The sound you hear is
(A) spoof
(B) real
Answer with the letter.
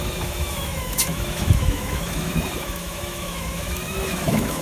A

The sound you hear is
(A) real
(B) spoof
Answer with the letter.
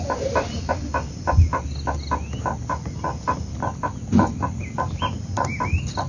A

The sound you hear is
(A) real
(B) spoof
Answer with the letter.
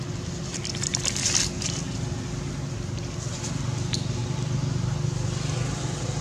A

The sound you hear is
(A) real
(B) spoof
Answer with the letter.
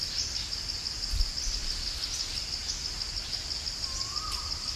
A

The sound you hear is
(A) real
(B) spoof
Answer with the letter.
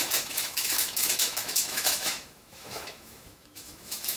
B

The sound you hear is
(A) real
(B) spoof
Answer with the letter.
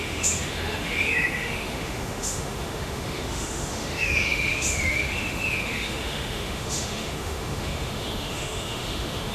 B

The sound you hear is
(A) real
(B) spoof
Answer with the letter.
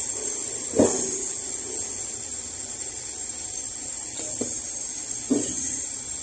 A